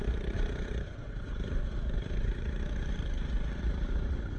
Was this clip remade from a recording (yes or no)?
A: yes